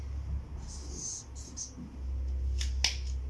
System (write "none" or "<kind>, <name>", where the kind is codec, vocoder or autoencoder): none